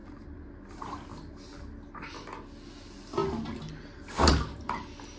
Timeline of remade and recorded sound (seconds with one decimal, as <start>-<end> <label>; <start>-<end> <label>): 0.0-5.2 recorded